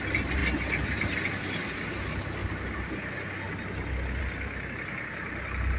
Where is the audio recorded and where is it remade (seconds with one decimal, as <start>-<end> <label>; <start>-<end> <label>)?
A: 0.0-5.8 recorded